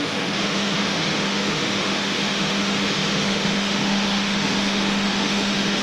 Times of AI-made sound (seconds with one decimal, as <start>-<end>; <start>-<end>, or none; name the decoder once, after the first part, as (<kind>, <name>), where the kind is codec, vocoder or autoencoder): 0.0-5.8 (autoencoder, DAC-VAE)